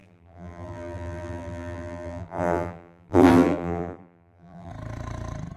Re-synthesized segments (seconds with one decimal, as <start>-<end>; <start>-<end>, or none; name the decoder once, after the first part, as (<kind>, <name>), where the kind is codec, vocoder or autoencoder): 0.0-4.7 (vocoder, BigVGAN v2)